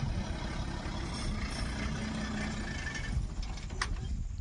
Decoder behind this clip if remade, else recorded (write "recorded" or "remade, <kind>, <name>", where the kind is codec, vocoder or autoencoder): recorded